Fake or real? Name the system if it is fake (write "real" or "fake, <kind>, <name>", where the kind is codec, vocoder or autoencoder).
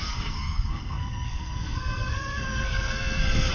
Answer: fake, codec, SNAC